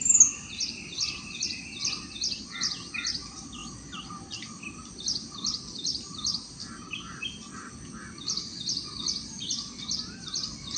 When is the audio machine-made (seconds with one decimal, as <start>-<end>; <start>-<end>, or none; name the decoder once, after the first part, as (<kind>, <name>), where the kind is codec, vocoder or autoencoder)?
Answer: none